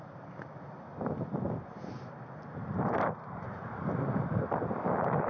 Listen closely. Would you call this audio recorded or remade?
recorded